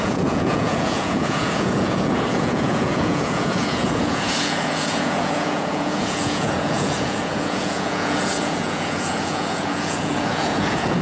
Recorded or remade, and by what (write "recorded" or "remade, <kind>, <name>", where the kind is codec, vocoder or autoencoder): remade, vocoder, Vocos